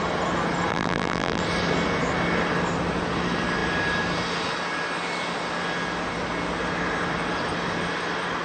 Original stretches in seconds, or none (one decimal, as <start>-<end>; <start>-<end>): 0.0-0.7; 1.4-8.4